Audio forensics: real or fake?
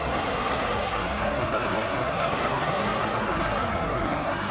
fake